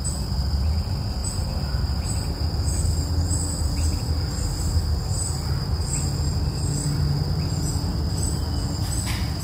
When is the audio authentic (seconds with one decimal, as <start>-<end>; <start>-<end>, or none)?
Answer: 0.0-9.4